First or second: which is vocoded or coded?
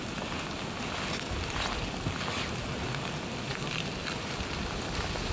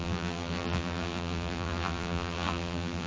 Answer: second